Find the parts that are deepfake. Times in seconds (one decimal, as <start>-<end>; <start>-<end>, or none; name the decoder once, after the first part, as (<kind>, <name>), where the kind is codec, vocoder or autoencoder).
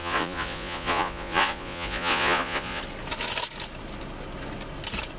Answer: 0.0-2.8 (vocoder, Vocos)